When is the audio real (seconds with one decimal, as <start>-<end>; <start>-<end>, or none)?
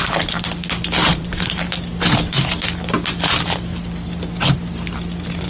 0.0-1.0; 1.6-5.5